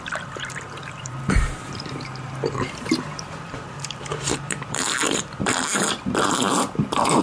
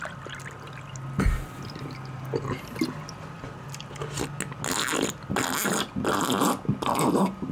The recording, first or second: second